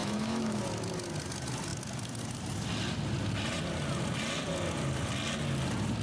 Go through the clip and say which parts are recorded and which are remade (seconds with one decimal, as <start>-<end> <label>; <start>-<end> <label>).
0.0-0.6 remade; 0.6-6.0 recorded